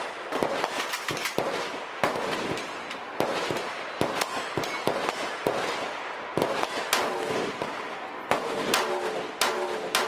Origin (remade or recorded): recorded